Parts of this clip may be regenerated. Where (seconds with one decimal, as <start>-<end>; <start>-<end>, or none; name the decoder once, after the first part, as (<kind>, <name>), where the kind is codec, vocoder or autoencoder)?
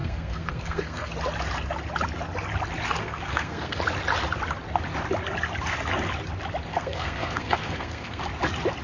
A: 0.0-1.1 (codec, SNAC); 3.0-3.8; 6.7-8.2